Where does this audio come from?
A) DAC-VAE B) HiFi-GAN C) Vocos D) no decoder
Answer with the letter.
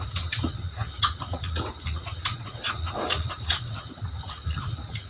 C